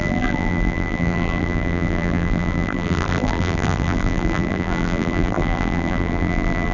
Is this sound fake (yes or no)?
yes